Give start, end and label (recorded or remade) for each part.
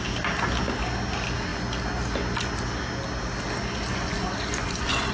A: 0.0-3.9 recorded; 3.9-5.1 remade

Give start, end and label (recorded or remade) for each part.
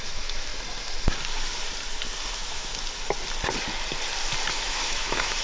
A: 0.0-0.5 remade; 0.5-2.3 recorded; 2.3-2.7 remade; 2.7-4.5 recorded; 4.5-5.4 remade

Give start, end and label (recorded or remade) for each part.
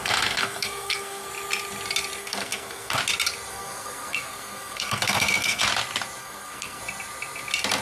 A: 0.0-1.3 remade; 1.3-2.2 recorded; 2.2-3.0 remade; 3.0-3.5 recorded; 3.5-5.6 remade; 5.6-6.2 recorded; 6.2-6.8 remade; 6.8-7.8 recorded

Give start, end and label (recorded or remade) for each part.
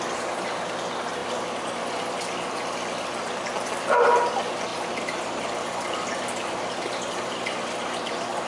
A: 0.0-8.5 recorded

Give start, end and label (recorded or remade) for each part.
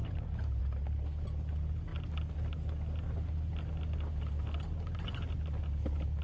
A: 0.0-0.6 remade; 0.6-6.2 recorded